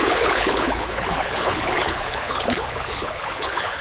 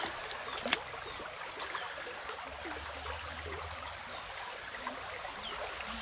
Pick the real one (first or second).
second